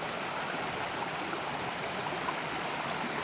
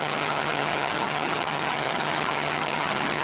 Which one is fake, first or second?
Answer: second